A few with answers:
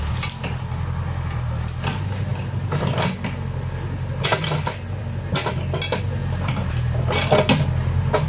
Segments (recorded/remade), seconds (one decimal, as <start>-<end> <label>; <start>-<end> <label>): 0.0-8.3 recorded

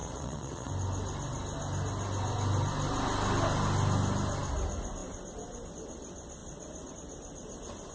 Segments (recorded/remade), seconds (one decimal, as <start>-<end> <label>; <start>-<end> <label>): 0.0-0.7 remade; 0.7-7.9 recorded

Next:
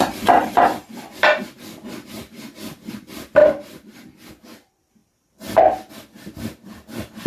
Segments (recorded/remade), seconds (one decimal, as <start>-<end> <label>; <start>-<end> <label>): 0.0-0.4 recorded; 0.4-1.4 remade; 1.4-3.4 recorded; 3.4-4.3 remade; 4.3-5.0 recorded; 5.0-5.9 remade; 5.9-7.3 recorded